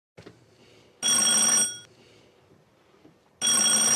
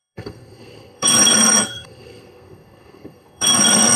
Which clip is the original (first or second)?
first